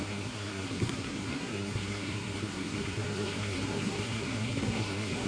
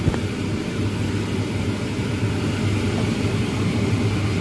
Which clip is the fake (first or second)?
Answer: first